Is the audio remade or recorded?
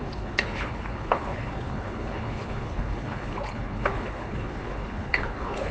remade